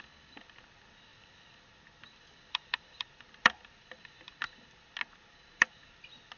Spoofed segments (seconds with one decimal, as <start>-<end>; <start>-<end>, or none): 1.1-3.9

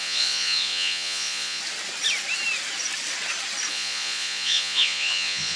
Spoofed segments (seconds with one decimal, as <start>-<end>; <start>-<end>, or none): 0.0-1.6; 3.7-5.6

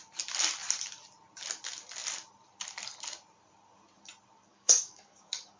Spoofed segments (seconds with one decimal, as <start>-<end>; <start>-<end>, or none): 4.5-5.6

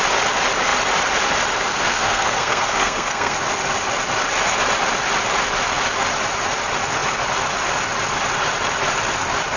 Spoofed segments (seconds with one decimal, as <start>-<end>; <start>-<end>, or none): 1.7-3.4

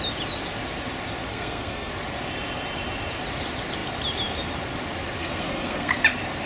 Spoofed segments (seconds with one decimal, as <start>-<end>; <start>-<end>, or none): 1.3-1.9; 5.2-5.9